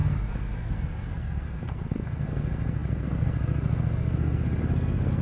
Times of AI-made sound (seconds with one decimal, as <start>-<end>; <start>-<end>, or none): 0.0-5.2